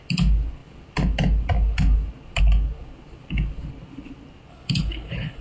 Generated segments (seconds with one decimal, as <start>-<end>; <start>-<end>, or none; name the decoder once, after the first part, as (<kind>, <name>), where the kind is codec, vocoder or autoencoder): 4.5-5.4 (codec, HILCodec)